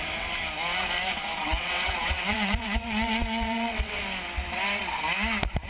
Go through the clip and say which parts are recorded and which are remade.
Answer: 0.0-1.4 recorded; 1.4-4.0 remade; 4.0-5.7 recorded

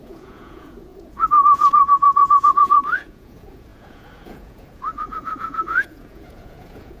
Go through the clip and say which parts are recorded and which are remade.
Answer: 0.0-7.0 remade

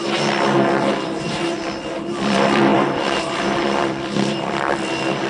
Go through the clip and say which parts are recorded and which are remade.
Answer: 0.0-0.9 recorded; 0.9-5.3 remade